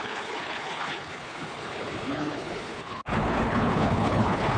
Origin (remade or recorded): remade